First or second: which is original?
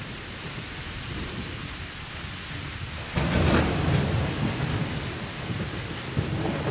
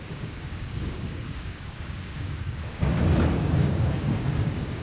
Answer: first